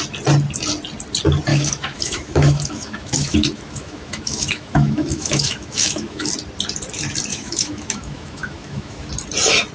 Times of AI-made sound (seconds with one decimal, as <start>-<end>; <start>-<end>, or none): 1.5-6.3; 7.3-9.1

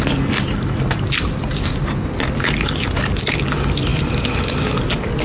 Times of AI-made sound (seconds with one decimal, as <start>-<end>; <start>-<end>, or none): none